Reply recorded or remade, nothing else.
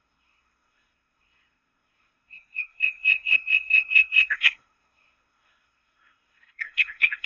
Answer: remade